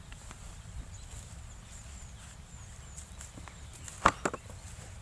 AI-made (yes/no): no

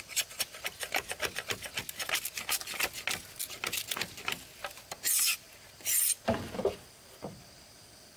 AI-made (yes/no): no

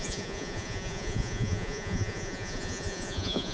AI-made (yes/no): yes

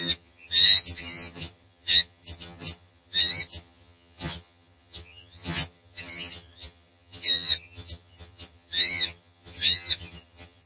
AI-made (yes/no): yes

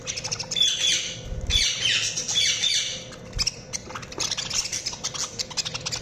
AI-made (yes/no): no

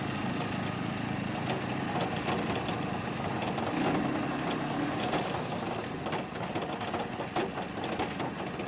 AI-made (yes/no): no